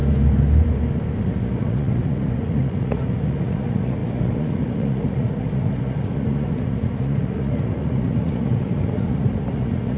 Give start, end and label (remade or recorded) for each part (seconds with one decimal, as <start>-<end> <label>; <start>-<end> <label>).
0.0-1.2 recorded; 1.2-10.0 remade